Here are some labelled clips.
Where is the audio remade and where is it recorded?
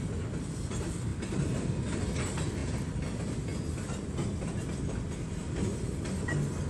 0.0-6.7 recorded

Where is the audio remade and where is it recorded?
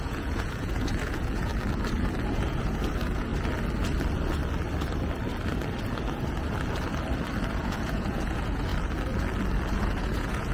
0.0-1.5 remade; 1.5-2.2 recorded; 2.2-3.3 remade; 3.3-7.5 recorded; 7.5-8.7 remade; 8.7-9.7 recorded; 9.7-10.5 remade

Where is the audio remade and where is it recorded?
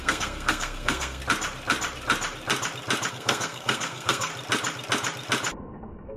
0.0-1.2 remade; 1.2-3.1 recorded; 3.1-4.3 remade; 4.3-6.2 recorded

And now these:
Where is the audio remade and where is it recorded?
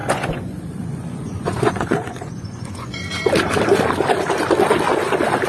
0.0-3.3 remade; 3.3-5.5 recorded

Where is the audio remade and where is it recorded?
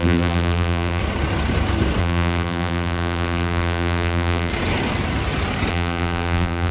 0.0-1.0 remade; 1.0-2.0 recorded; 2.0-4.5 remade; 4.5-5.7 recorded; 5.7-6.7 remade